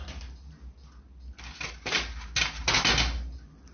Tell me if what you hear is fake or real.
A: real